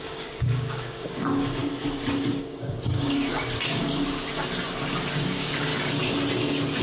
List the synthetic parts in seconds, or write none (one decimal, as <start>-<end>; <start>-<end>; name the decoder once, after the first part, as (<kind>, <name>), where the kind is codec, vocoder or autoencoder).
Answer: 0.0-1.6 (codec, DAC); 2.3-3.3; 5.1-5.7